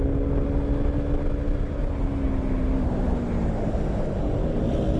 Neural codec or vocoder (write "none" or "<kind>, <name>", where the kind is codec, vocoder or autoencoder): none